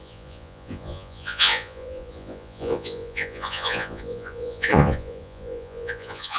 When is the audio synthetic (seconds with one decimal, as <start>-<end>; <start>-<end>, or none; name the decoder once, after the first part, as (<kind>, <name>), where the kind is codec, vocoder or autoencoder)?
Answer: 0.0-6.4 (vocoder, Vocos)